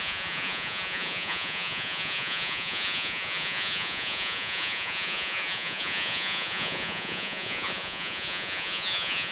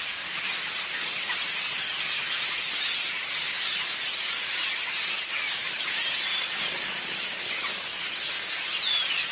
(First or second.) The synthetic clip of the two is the first